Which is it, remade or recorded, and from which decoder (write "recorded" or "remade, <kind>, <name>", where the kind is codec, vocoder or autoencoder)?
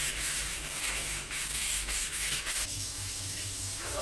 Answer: remade, codec, DAC